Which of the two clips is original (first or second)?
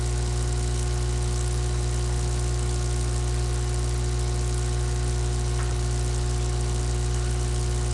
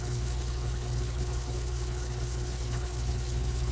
first